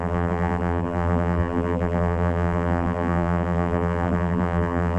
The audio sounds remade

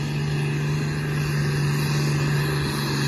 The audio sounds recorded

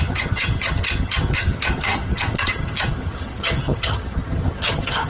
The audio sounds remade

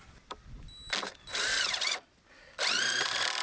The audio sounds recorded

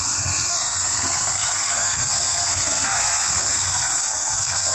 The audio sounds remade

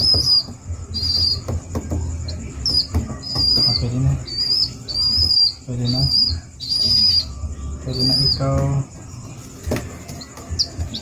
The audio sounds recorded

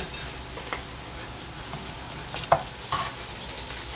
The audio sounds recorded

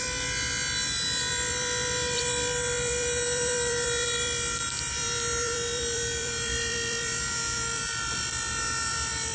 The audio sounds remade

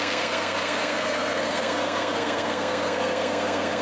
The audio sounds remade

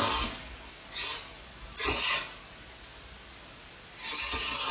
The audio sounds recorded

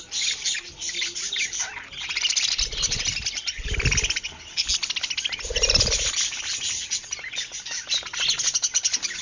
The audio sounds recorded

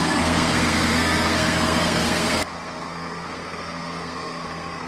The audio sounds remade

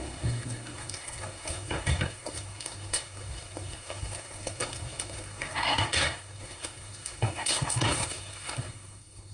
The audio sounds remade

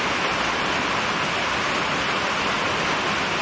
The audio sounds recorded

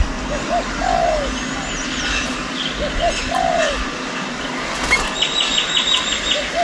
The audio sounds recorded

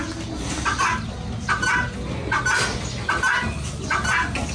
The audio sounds recorded